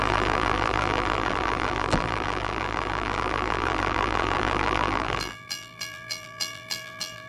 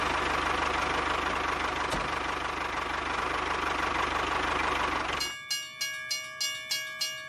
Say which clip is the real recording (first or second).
second